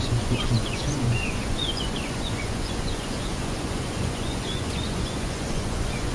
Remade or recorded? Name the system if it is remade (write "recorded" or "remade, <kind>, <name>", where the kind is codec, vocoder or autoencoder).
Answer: remade, vocoder, Vocos